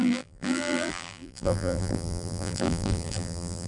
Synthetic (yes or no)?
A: yes